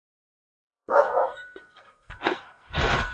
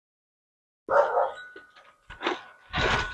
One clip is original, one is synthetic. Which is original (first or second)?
second